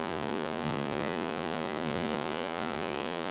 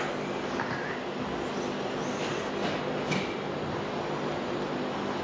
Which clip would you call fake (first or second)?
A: first